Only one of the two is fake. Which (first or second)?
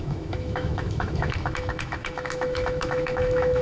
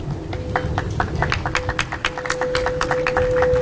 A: first